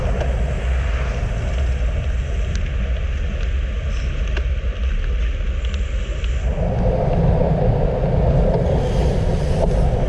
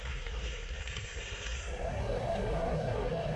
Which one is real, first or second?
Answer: first